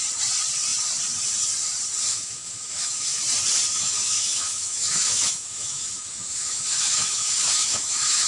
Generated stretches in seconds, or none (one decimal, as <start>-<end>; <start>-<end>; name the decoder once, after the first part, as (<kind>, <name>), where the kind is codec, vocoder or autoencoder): 2.1-3.2 (autoencoder, DAC-VAE); 3.7-8.3